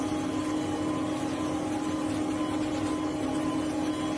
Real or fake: real